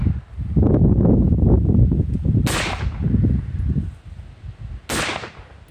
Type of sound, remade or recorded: recorded